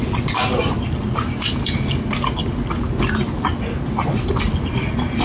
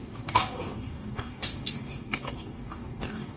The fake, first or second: second